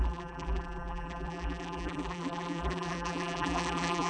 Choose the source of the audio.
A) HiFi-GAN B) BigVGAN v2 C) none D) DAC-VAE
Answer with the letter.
B